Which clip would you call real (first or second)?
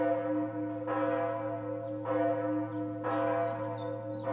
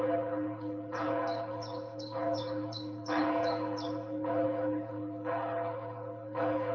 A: first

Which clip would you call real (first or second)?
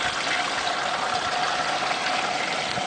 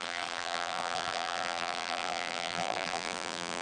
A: first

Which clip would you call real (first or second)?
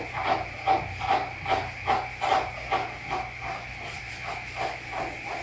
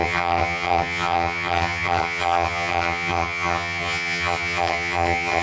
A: first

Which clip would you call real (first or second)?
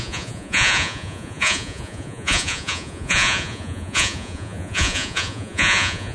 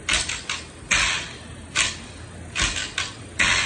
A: second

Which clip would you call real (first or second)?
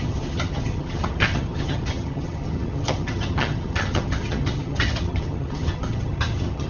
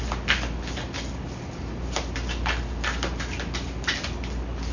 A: second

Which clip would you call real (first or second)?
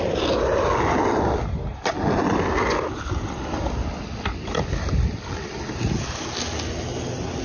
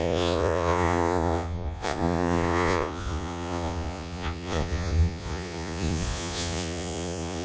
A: first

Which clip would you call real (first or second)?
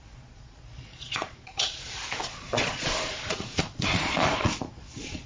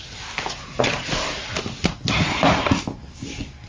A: second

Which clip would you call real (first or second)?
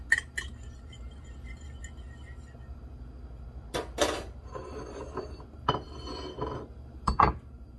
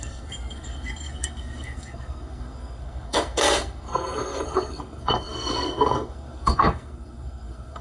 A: first